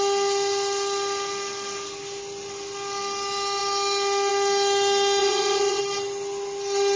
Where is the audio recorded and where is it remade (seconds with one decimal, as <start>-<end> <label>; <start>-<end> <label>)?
0.0-5.2 recorded; 5.2-5.8 remade; 5.8-7.0 recorded